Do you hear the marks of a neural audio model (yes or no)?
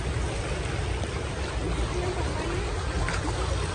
no